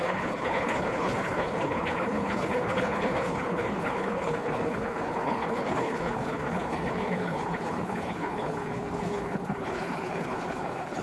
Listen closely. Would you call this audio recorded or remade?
remade